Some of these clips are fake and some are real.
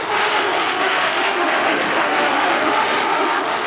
fake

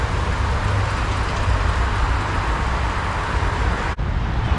real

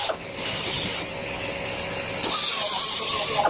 real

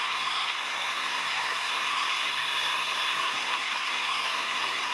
fake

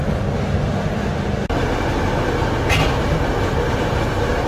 real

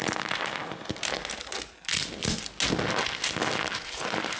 real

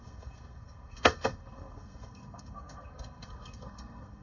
fake